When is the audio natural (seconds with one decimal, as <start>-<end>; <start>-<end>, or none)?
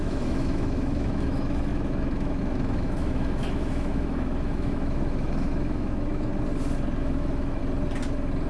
6.3-7.0; 7.6-8.5